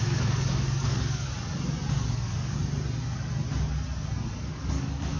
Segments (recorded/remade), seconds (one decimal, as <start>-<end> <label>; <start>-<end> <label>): 0.0-1.3 remade; 1.3-1.9 recorded; 1.9-2.6 remade; 2.6-4.5 recorded; 4.5-5.2 remade

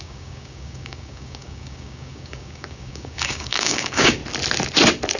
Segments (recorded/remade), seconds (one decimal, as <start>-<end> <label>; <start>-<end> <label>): 0.0-4.2 remade; 4.2-5.2 recorded

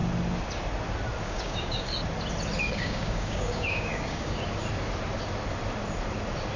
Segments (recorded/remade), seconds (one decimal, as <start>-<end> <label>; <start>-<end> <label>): 0.0-1.2 recorded; 1.2-1.9 remade; 1.9-2.6 recorded; 2.6-4.4 remade; 4.4-6.6 recorded

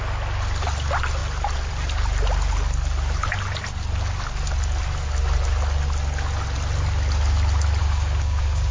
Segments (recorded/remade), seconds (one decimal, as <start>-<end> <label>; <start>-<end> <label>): 0.0-7.8 recorded; 7.8-8.7 remade

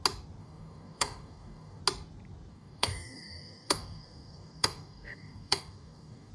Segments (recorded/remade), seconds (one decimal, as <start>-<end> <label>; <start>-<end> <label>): 0.0-0.4 recorded; 0.4-1.8 remade; 1.8-2.5 recorded; 2.5-6.3 remade